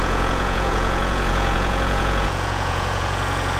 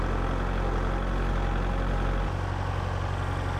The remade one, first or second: first